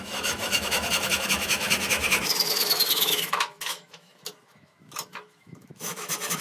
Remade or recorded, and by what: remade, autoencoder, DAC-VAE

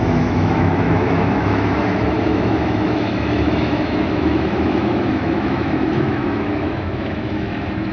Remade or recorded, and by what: remade, autoencoder, DAC-VAE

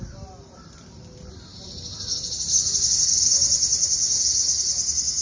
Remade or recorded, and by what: recorded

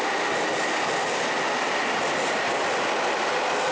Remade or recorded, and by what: recorded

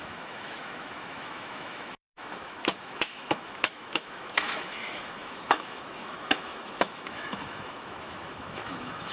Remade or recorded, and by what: remade, autoencoder, DAC-VAE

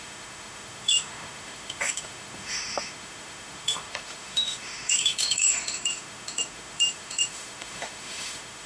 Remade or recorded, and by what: remade, autoencoder, DAC-VAE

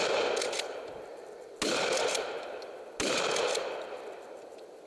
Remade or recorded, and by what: recorded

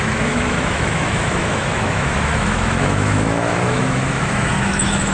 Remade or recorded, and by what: remade, autoencoder, DAC-VAE